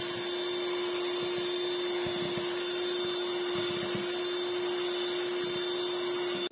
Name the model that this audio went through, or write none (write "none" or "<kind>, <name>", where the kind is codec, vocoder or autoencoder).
none